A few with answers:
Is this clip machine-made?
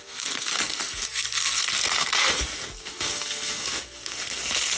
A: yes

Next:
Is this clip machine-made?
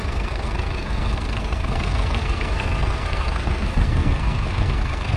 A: yes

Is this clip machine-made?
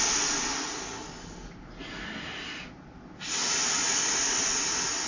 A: no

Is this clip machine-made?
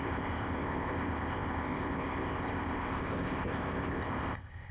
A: yes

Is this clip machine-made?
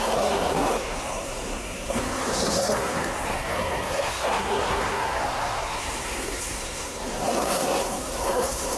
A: yes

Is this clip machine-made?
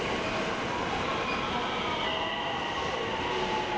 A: no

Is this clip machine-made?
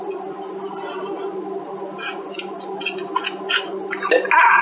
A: no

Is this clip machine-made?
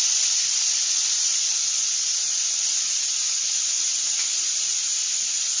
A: no